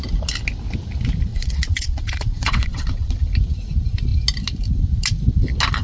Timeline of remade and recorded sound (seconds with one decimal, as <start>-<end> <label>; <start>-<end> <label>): 0.0-1.3 recorded; 1.3-3.2 remade; 3.2-5.8 recorded